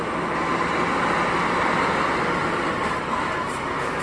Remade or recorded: recorded